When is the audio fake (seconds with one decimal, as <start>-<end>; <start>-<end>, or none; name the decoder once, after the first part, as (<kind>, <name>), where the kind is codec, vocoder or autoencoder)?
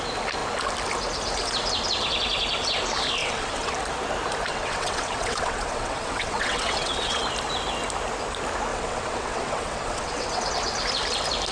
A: 3.2-3.7 (vocoder, WaveNeXt); 4.5-7.2; 8.7-10.5